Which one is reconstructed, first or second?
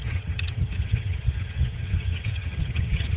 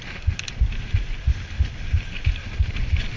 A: first